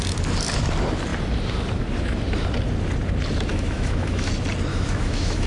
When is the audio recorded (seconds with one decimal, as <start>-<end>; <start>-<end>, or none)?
0.0-3.5; 4.3-4.7